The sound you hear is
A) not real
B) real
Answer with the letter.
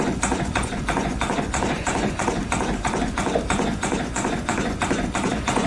A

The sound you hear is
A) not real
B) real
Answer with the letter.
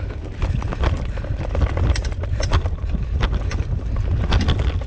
B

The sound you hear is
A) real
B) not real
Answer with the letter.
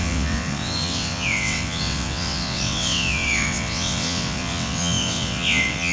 B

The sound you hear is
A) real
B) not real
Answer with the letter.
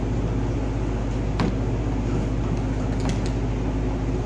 A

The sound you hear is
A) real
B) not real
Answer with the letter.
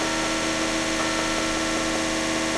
A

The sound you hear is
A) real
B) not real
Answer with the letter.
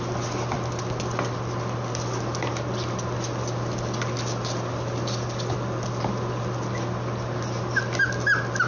A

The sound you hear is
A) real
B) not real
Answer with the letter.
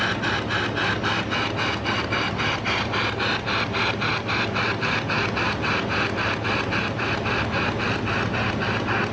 A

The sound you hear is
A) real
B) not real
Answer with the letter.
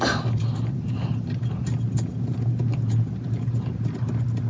A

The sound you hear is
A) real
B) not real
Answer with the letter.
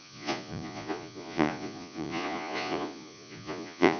B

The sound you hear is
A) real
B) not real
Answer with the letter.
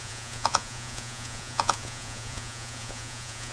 B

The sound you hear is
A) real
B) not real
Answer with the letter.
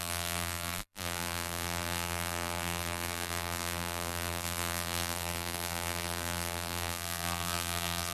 B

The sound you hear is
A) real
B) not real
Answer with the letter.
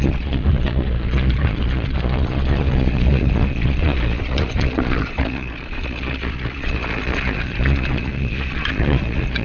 B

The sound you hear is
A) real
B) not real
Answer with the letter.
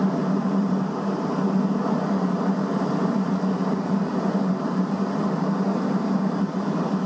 B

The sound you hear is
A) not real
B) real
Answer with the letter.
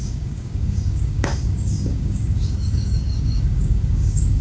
A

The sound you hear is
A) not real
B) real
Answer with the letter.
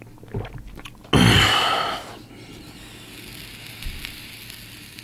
B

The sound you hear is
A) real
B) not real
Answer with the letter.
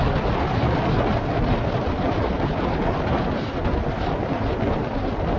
A